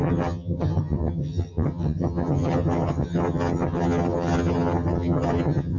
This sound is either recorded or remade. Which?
remade